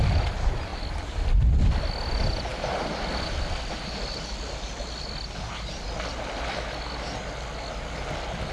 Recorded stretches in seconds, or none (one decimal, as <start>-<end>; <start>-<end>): 0.0-8.5